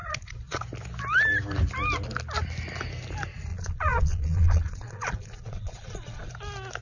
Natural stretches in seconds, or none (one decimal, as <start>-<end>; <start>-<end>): 0.6-3.5; 6.3-6.8